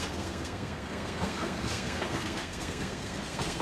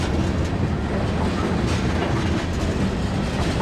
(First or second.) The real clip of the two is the second